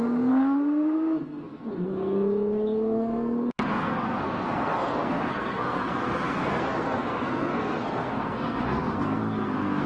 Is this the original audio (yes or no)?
no